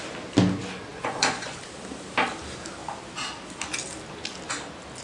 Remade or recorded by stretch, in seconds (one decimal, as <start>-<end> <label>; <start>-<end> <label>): 0.0-0.9 recorded; 0.9-1.6 remade; 1.6-5.0 recorded